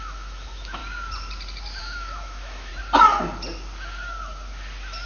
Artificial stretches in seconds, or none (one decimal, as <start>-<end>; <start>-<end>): 0.0-0.8; 1.8-2.7